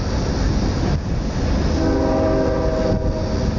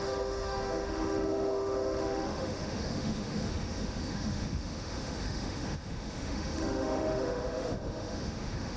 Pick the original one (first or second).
first